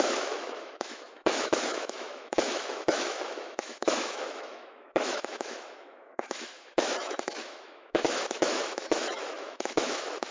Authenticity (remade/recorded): remade